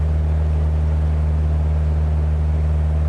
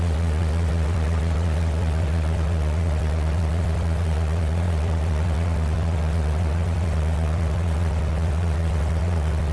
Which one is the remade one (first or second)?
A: second